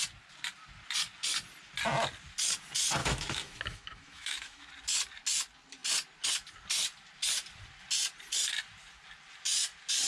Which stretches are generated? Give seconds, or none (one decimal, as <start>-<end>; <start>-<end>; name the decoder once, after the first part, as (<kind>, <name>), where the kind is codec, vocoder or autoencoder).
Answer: 3.0-4.7 (autoencoder, DAC-VAE)